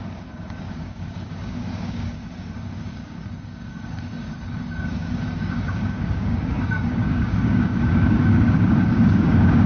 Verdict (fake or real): fake